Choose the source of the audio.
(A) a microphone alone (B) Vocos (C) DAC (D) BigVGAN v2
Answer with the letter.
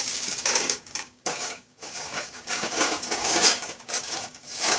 C